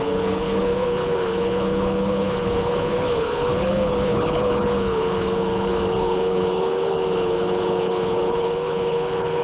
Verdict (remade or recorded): remade